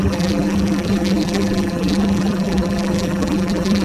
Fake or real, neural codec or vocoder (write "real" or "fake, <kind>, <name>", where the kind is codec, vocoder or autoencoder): fake, vocoder, BigVGAN v2